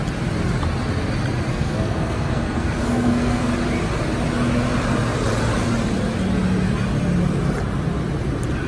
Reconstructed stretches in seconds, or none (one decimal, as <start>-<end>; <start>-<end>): 1.5-3.5